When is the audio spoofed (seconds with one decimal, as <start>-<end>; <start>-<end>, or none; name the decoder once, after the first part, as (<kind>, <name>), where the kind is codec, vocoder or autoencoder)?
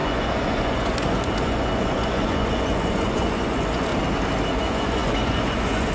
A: 0.0-3.9 (vocoder, Vocos); 4.5-5.9